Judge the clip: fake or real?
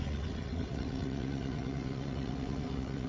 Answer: fake